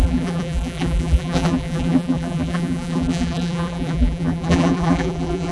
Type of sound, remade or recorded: remade